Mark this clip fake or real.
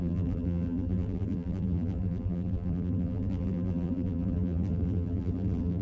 fake